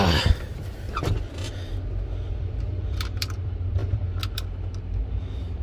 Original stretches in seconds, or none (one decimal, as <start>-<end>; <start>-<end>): 1.4-2.3; 3.8-5.6